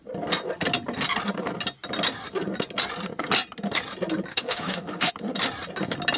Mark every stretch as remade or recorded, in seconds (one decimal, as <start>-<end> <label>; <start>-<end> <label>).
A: 0.0-4.3 recorded; 4.3-5.1 remade; 5.1-6.2 recorded